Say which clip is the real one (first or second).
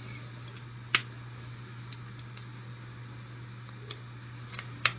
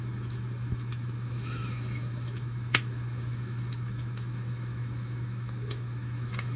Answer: first